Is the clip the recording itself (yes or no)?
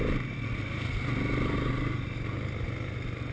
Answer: yes